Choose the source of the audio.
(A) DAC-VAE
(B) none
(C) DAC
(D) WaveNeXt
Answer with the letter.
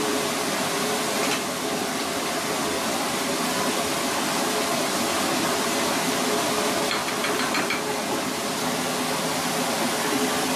B